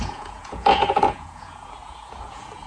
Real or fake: fake